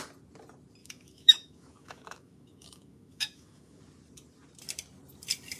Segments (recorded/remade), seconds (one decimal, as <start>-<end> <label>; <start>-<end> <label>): 0.0-0.8 recorded; 0.8-3.8 remade; 3.8-5.6 recorded